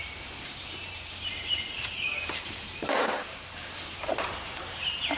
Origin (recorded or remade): remade